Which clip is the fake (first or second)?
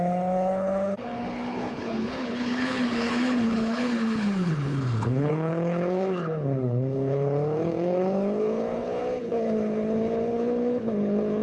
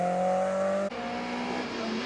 first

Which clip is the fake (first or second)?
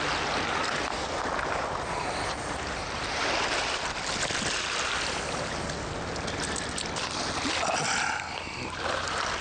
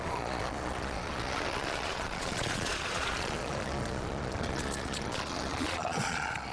second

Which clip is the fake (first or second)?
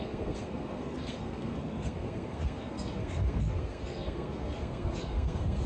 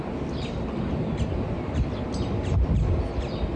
first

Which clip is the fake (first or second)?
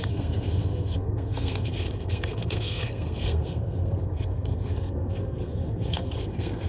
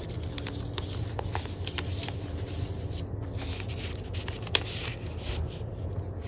first